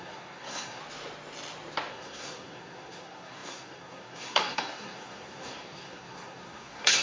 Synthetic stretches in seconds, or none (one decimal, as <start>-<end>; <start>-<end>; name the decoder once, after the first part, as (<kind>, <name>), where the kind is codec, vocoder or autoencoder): 0.0-0.8 (codec, SNAC); 1.9-7.0